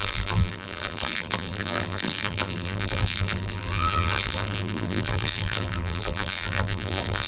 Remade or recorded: remade